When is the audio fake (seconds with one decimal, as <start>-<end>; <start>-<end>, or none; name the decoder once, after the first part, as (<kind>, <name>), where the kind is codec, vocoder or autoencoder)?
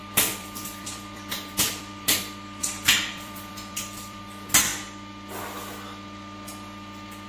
0.0-2.2 (vocoder, BigVGAN v2); 2.6-4.2